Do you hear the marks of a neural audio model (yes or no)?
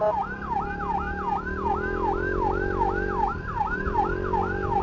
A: no